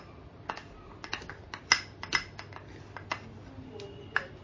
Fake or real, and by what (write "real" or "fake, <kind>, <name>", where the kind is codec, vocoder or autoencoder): real